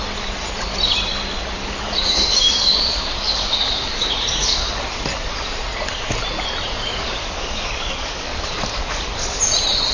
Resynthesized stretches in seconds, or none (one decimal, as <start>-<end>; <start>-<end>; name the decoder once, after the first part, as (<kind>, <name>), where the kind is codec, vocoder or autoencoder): 1.6-4.7 (codec, DAC); 6.8-9.4